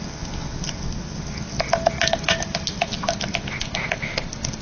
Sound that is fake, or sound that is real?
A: real